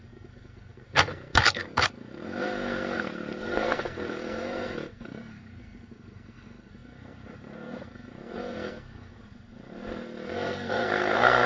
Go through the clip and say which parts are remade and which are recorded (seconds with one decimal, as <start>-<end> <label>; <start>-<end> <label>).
0.0-11.5 remade